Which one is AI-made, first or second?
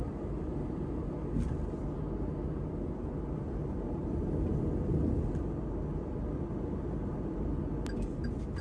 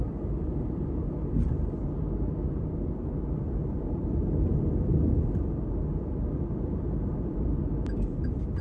second